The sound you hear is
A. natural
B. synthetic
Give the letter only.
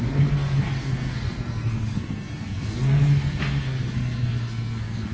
B